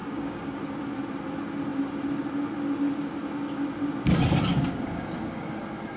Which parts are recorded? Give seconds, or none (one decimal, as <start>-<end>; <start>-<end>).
0.6-4.5; 5.6-6.0